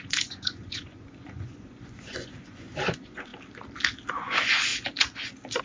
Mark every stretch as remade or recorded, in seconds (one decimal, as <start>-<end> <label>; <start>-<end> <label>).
0.0-3.3 remade; 3.3-4.1 recorded; 4.1-4.7 remade; 4.7-5.6 recorded